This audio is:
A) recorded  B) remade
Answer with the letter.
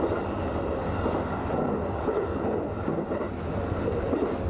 A